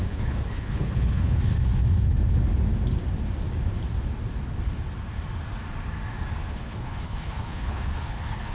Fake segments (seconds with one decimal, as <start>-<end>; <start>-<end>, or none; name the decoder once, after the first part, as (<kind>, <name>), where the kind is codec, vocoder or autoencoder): 0.0-1.4 (codec, HILCodec); 6.5-8.5